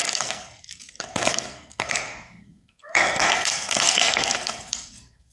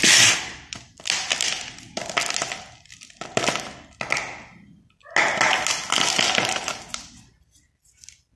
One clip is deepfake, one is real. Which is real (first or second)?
second